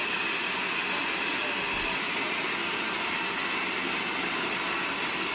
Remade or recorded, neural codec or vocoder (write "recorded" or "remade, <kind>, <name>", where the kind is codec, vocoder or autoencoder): recorded